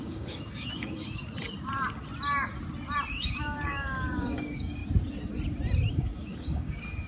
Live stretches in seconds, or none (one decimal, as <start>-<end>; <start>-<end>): 1.2-3.1; 4.8-5.9